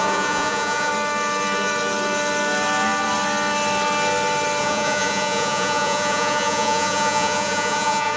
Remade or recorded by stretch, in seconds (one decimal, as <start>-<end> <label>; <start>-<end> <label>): 0.0-0.9 remade; 0.9-4.6 recorded; 4.6-8.2 remade